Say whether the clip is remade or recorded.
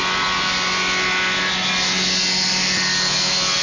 recorded